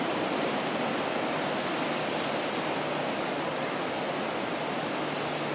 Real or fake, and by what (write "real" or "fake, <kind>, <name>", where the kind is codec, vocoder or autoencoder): real